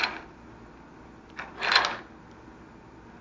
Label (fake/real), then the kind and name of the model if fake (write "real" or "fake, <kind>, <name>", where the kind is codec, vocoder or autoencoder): real